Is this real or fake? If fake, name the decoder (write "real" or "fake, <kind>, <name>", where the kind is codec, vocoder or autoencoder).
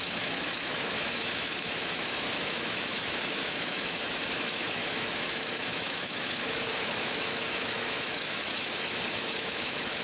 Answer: fake, autoencoder, DAC-VAE